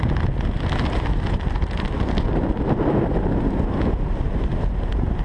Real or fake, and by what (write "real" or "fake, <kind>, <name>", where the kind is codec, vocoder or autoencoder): real